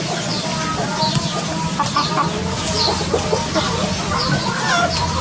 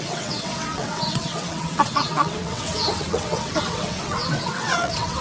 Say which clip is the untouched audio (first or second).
first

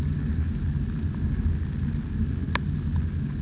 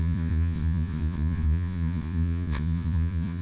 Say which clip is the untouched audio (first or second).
first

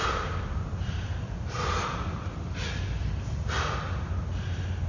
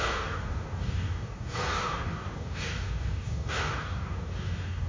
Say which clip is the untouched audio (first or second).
first